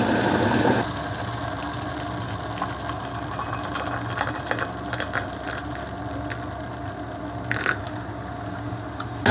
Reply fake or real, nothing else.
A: real